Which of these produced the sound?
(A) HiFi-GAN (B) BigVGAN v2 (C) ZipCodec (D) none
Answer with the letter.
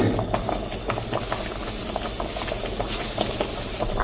D